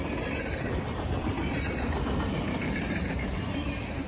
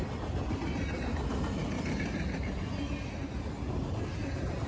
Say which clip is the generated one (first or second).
first